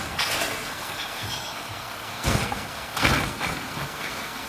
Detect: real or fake fake